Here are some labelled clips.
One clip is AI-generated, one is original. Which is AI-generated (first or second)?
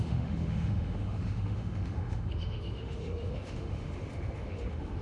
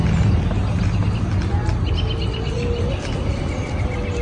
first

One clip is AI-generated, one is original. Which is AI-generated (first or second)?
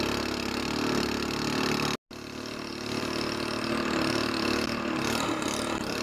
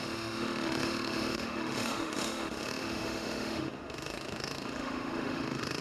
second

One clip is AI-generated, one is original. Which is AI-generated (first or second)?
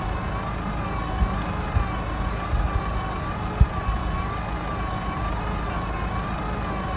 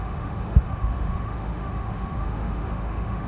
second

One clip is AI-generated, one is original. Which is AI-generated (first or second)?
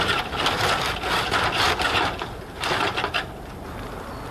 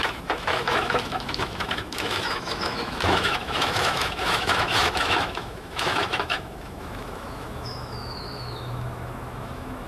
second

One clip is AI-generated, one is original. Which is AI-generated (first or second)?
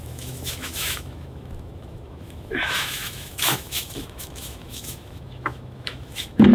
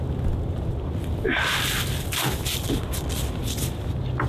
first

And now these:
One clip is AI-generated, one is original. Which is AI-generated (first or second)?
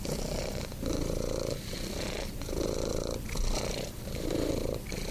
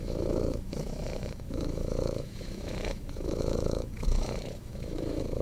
second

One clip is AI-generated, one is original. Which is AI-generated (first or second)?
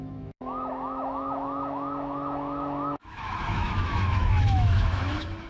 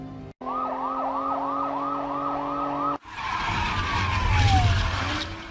first